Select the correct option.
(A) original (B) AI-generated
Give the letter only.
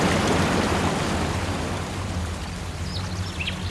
A